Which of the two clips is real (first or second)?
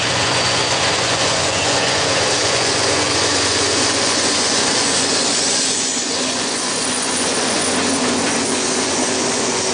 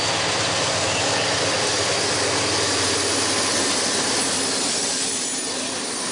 second